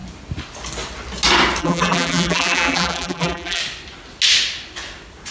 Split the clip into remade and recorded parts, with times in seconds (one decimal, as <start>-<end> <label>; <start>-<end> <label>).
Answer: 0.0-1.6 recorded; 1.6-3.6 remade; 3.6-5.3 recorded